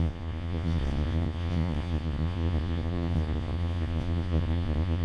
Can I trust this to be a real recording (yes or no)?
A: no